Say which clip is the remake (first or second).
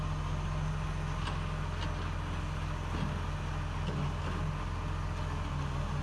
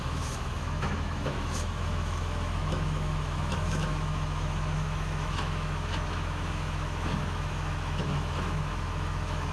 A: second